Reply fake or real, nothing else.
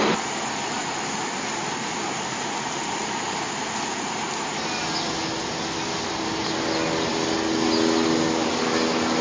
real